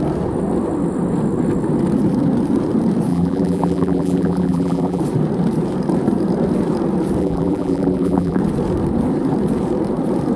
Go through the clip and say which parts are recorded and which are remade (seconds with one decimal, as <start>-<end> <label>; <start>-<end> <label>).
0.0-3.1 recorded; 3.1-5.0 remade; 5.0-7.2 recorded; 7.2-8.4 remade; 8.4-10.4 recorded